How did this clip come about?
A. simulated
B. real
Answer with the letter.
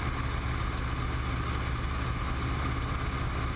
B